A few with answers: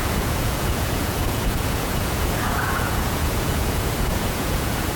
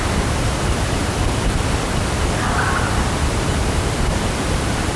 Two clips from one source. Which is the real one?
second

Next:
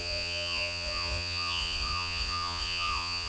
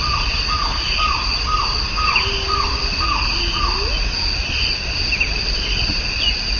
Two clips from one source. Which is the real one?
second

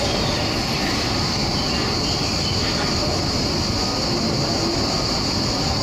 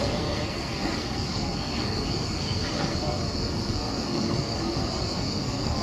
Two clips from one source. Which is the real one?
first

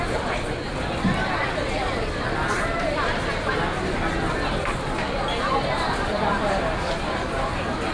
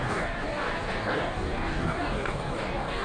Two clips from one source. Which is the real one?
first